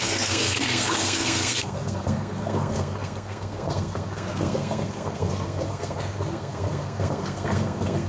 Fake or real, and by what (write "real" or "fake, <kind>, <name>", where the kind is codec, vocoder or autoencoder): fake, codec, SNAC